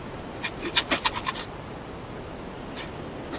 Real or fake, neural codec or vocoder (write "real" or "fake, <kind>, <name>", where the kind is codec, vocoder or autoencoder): real